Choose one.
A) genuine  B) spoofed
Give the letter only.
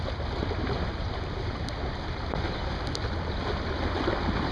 A